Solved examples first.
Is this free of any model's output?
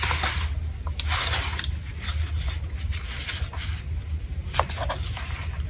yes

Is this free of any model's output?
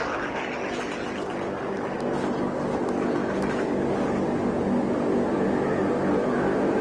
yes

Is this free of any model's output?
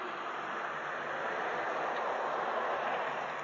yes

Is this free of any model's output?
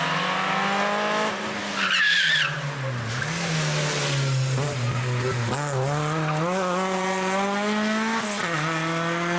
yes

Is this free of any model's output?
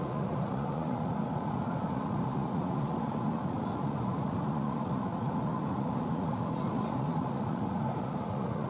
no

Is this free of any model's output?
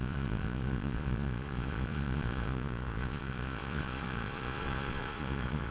no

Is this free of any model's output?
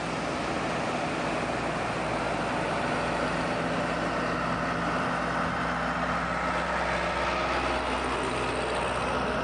yes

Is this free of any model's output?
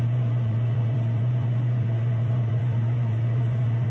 no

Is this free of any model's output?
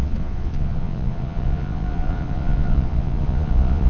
no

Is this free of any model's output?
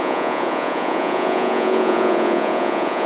no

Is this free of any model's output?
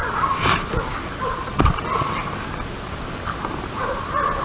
yes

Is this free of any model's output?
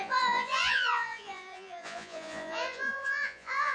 no